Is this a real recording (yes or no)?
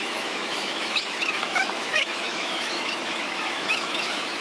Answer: no